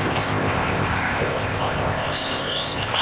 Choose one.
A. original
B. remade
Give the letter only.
B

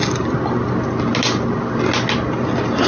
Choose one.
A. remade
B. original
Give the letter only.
B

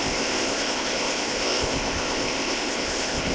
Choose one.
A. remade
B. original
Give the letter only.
A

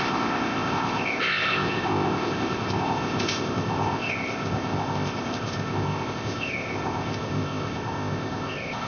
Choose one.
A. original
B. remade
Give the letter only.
B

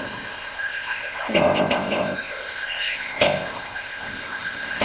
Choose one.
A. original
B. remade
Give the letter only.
B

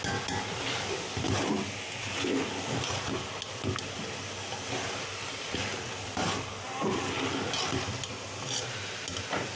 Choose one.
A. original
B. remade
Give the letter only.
A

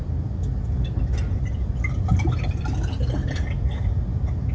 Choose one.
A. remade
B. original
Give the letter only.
B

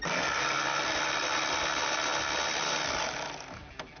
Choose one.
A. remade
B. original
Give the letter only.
B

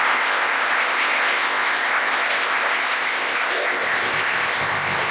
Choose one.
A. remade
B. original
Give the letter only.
A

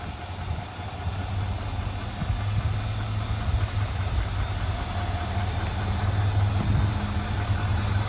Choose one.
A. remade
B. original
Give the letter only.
B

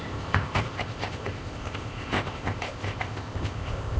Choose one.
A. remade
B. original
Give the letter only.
A